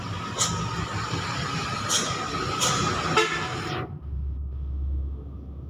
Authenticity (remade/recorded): recorded